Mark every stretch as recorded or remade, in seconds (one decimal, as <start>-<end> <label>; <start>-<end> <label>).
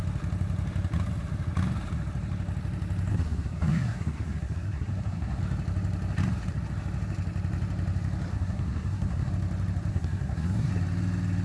0.0-3.1 recorded; 3.1-5.4 remade; 5.4-8.3 recorded; 8.3-9.3 remade; 9.3-9.9 recorded; 9.9-10.7 remade; 10.7-11.4 recorded